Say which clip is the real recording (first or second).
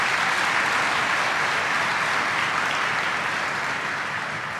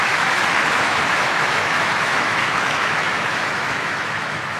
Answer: first